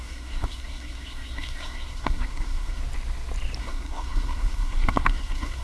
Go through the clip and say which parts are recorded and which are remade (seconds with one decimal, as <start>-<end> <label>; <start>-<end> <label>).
0.0-2.8 remade; 2.8-3.6 recorded; 3.6-5.6 remade